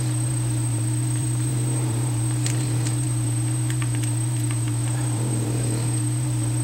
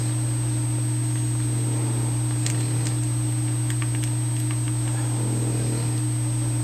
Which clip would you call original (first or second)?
second